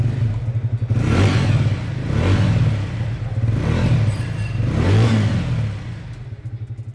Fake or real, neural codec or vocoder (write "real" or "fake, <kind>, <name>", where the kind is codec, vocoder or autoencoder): real